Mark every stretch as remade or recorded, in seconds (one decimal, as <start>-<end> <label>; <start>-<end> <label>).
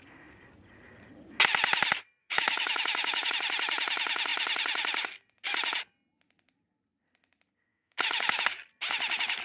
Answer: 0.0-2.2 recorded; 2.2-3.3 remade; 3.3-7.7 recorded; 7.7-8.4 remade; 8.4-9.4 recorded